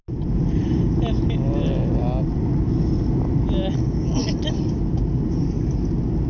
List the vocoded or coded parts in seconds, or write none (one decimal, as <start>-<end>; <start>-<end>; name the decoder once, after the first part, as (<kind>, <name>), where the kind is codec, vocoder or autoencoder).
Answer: 4.2-4.8 (vocoder, BigVGAN v2)